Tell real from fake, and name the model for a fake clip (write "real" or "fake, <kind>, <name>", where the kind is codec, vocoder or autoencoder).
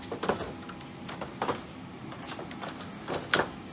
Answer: real